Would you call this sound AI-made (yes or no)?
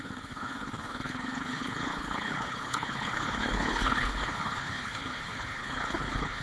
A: yes